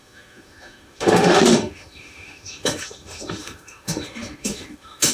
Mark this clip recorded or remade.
remade